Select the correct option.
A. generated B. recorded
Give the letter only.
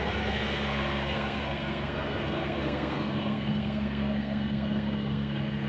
A